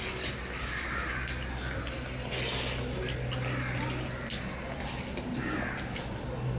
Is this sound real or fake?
real